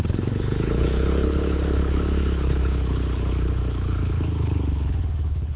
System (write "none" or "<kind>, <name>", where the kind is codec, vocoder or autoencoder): codec, HILCodec